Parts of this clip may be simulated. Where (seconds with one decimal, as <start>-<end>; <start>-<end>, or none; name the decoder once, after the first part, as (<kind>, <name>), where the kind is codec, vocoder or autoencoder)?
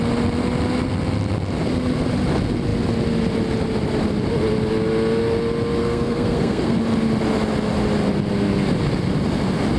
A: 5.8-6.8 (codec, SNAC)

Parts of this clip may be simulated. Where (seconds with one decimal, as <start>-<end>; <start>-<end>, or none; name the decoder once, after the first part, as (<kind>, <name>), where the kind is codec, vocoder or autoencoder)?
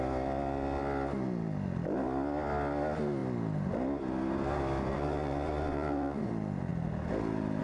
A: 4.9-6.3 (vocoder, Vocos)